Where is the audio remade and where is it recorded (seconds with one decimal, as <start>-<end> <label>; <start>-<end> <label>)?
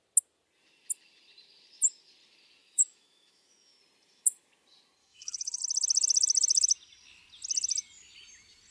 0.0-2.6 recorded; 2.6-3.8 remade; 3.8-5.0 recorded; 5.0-5.6 remade; 5.6-8.7 recorded